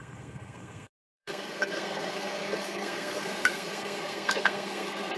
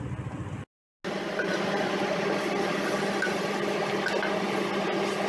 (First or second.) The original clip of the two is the second